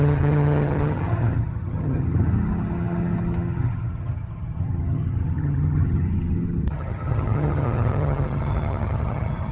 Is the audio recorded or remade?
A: remade